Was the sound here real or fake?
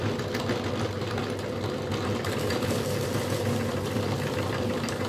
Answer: real